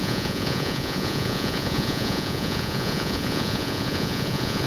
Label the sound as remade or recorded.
remade